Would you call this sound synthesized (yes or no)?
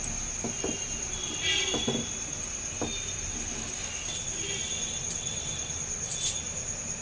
no